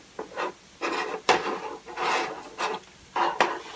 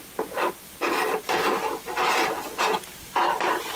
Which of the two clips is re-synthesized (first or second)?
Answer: second